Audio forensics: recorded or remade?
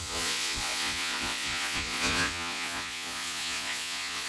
remade